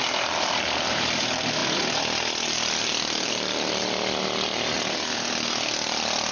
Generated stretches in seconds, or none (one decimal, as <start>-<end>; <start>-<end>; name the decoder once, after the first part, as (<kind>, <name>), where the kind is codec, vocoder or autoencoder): none